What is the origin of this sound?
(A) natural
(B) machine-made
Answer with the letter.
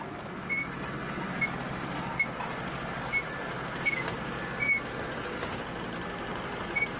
A